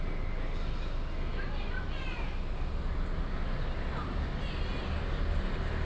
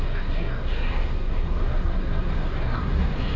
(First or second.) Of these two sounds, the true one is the first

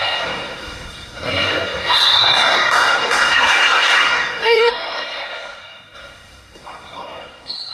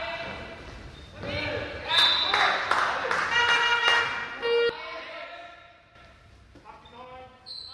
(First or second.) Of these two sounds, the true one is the second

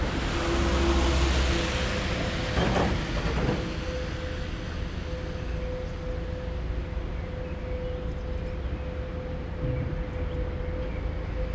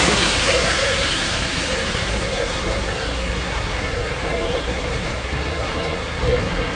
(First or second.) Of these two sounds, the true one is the first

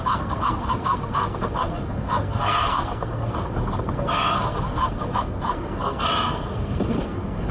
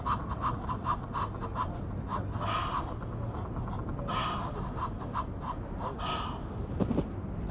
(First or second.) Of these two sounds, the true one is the second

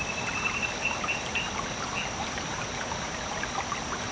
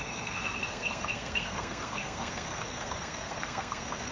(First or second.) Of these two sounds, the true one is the first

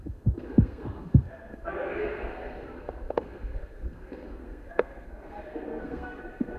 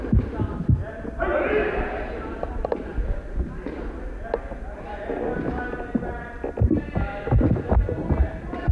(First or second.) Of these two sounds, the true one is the second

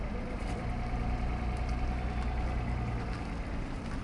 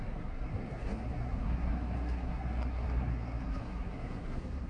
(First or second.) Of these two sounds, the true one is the first